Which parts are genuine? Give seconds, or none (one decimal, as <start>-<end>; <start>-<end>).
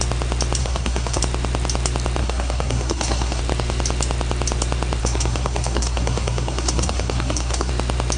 0.0-0.6; 1.2-2.2; 3.4-5.0; 7.7-8.2